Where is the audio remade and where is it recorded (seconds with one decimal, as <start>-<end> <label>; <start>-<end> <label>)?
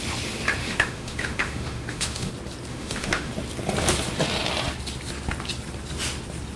0.0-0.6 recorded; 0.6-2.3 remade; 2.3-2.7 recorded; 2.7-3.3 remade; 3.3-6.6 recorded